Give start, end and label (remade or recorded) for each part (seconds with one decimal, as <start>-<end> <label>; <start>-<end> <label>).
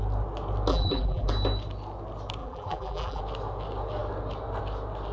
0.0-0.7 recorded; 0.7-1.3 remade; 1.3-2.4 recorded; 2.4-3.2 remade; 3.2-5.1 recorded